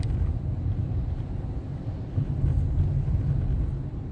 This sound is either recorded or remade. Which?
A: recorded